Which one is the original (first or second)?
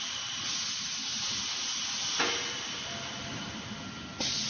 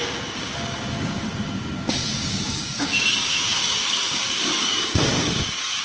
first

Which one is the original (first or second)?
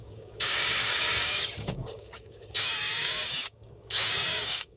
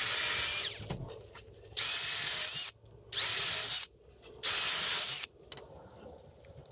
second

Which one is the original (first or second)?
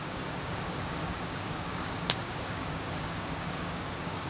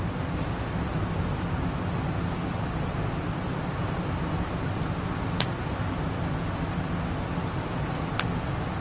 second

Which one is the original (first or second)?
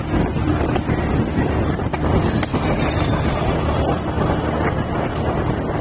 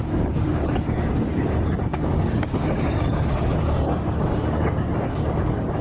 first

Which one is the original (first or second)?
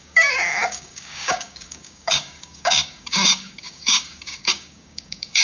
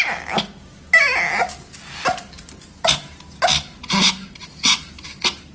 second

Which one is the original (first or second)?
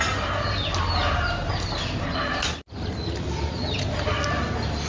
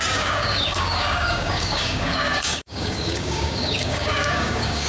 first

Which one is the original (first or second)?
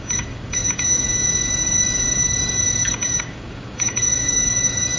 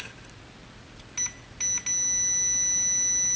second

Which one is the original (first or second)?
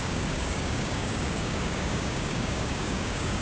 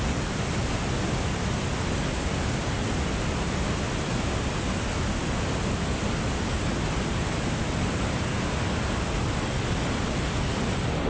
second